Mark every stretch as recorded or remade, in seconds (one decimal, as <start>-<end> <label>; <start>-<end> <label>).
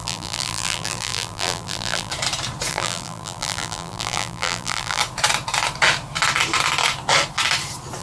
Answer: 0.0-2.1 remade; 2.1-2.7 recorded; 2.7-5.0 remade; 5.0-8.0 recorded